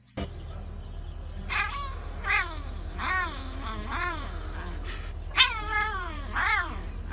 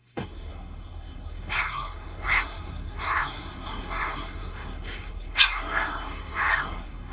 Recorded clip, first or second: first